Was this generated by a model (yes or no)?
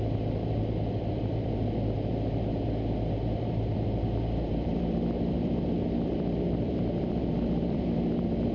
yes